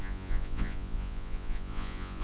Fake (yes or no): yes